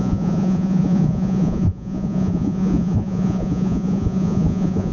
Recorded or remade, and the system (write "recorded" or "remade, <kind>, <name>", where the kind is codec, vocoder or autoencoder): remade, vocoder, Vocos